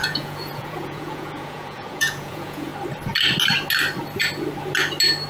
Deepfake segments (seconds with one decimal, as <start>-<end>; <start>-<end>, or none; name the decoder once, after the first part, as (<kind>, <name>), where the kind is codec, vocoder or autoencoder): 0.0-2.7 (vocoder, Vocos)